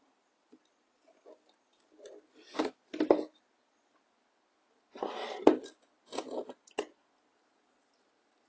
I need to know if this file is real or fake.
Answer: real